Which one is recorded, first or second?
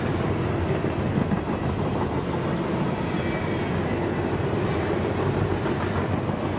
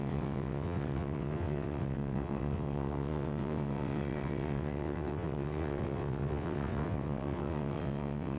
first